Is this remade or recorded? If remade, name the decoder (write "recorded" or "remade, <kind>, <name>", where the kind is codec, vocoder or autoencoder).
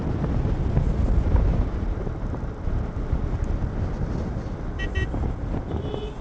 recorded